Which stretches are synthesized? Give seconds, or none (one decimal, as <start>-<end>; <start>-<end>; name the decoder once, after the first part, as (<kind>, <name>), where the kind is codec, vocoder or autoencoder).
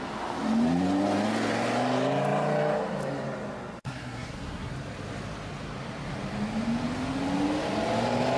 3.8-4.7 (codec, SNAC)